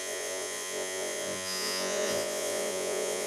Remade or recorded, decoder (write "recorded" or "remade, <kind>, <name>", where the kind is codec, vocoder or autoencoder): remade, vocoder, Vocos